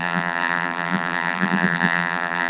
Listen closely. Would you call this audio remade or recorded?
remade